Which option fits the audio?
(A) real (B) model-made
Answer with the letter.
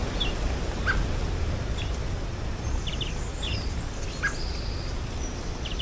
A